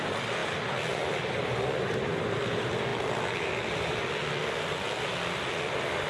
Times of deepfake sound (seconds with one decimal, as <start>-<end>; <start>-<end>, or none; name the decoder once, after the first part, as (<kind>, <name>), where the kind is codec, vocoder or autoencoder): 0.4-1.3 (vocoder, BigVGAN v2)